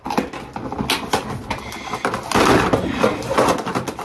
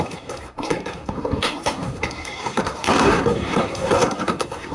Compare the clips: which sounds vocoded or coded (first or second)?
second